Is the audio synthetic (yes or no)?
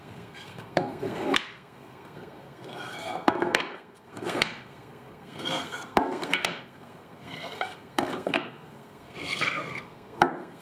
yes